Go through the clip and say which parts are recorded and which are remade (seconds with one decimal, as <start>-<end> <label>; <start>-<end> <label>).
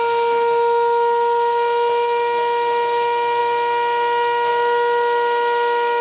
0.0-6.0 recorded